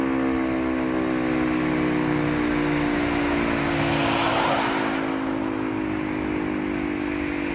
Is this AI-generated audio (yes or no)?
no